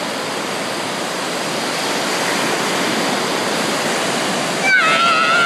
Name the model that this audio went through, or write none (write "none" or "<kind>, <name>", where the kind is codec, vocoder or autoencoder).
none